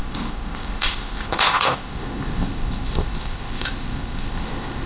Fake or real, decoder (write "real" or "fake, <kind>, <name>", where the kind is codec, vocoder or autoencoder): fake, codec, ZipCodec